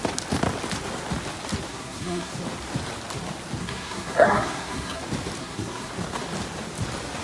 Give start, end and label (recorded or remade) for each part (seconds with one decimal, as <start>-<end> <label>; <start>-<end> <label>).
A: 0.0-1.7 recorded; 1.7-2.3 remade; 2.3-3.6 recorded; 3.6-5.0 remade; 5.0-5.4 recorded; 5.4-5.9 remade; 5.9-7.2 recorded

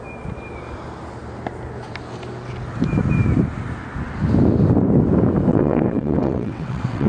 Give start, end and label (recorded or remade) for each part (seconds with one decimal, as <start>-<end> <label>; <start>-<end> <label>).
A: 0.0-5.5 recorded; 5.5-7.1 remade

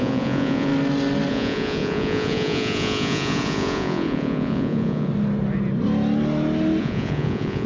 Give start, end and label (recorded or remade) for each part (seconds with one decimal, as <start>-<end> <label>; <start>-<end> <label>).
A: 0.0-0.7 remade; 0.7-1.3 recorded; 1.3-5.1 remade; 5.1-6.8 recorded; 6.8-7.7 remade

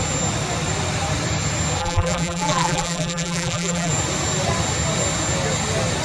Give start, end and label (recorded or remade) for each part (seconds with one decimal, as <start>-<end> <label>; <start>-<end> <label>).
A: 0.0-1.8 recorded; 1.8-3.9 remade; 3.9-6.0 recorded

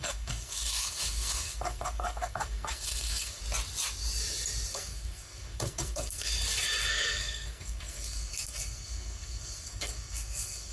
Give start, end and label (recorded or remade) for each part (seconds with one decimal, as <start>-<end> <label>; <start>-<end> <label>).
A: 0.0-3.4 remade; 3.4-4.7 recorded; 4.7-6.3 remade; 6.3-6.9 recorded; 6.9-10.7 remade

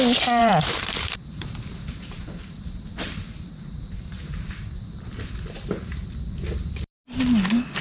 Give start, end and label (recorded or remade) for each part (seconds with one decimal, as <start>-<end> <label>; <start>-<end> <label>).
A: 0.0-0.4 recorded; 0.4-4.4 remade; 4.4-7.8 recorded

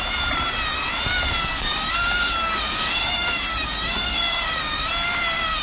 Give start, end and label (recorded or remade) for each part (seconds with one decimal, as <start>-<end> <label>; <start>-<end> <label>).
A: 0.0-1.5 recorded; 1.5-4.9 remade; 4.9-5.6 recorded

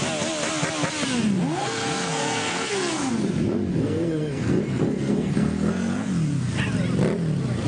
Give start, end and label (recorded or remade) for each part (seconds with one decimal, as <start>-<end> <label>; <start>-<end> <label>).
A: 0.0-1.6 recorded; 1.6-3.1 remade; 3.1-3.7 recorded; 3.7-6.1 remade; 6.1-7.7 recorded